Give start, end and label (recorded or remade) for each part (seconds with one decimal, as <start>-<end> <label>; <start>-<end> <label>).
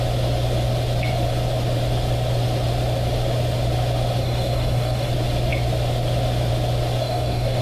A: 0.0-4.2 recorded; 4.2-5.1 remade; 5.1-7.0 recorded; 7.0-7.6 remade